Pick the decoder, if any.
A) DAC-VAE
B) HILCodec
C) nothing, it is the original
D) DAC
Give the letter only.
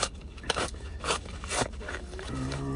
D